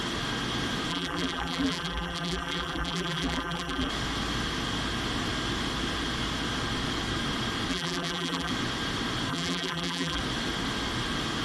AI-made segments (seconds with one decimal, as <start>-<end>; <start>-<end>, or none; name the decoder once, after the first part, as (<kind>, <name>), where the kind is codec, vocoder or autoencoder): 0.9-3.9 (vocoder, BigVGAN v2); 7.7-8.5; 9.3-10.2